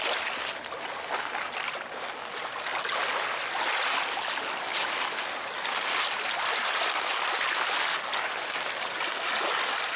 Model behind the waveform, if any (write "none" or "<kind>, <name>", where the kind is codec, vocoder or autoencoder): none